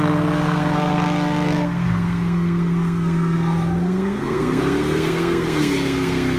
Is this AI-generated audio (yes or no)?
yes